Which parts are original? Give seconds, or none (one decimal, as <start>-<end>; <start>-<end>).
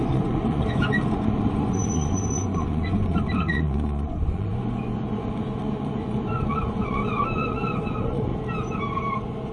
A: 8.3-9.1